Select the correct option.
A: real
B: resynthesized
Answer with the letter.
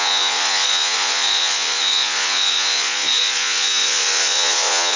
B